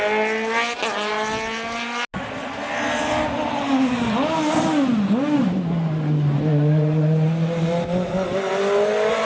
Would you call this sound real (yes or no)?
yes